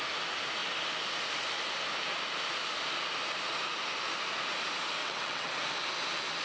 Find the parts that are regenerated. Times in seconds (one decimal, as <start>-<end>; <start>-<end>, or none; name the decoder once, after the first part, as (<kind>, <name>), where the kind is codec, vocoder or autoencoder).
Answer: 5.0-5.5 (vocoder, WaveNeXt)